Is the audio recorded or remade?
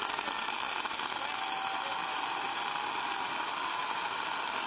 recorded